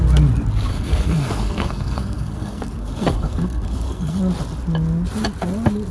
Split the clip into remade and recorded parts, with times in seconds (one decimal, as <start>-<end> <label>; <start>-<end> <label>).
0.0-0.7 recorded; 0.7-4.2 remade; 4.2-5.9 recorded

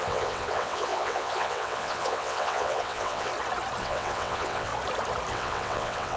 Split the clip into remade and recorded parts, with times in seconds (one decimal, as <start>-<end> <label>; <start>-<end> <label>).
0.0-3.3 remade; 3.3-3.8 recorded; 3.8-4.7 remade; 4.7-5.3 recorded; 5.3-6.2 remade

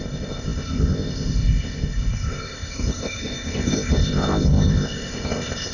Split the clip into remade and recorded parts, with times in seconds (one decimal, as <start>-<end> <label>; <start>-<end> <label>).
0.0-5.7 remade